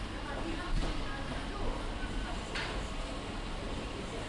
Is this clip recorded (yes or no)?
yes